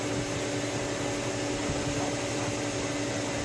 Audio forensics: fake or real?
real